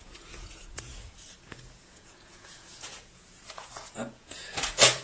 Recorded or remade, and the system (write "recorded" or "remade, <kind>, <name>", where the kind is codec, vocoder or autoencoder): remade, vocoder, Vocos